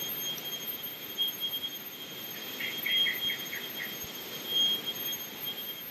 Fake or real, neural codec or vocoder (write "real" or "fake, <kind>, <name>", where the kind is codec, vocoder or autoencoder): fake, vocoder, BigVGAN v2